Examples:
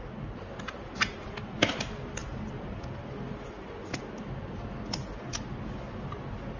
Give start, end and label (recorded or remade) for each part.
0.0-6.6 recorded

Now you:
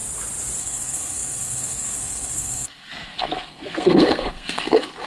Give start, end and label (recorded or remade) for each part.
0.0-0.6 recorded; 0.6-5.1 remade

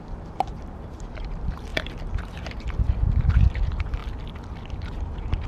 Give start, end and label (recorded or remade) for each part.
0.0-4.0 remade; 4.0-4.7 recorded; 4.7-5.5 remade

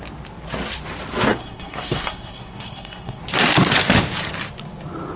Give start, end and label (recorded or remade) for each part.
0.0-1.3 recorded; 1.3-3.2 remade; 3.2-5.2 recorded

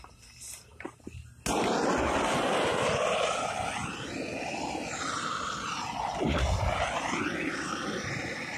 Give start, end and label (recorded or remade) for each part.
0.0-8.6 recorded

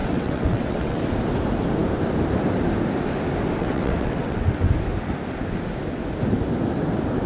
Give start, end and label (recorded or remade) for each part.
0.0-1.0 remade; 1.0-3.6 recorded; 3.6-4.7 remade; 4.7-7.3 recorded

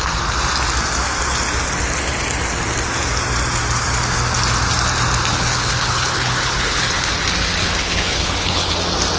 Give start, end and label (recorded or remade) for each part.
0.0-5.3 recorded; 5.3-7.1 remade; 7.1-7.6 recorded; 7.6-8.7 remade; 8.7-9.2 recorded

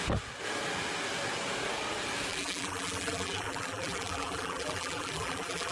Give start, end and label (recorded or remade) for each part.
0.0-2.3 recorded; 2.3-5.7 remade